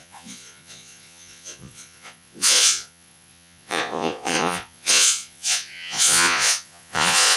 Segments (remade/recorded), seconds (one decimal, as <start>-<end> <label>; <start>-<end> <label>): 0.0-7.4 remade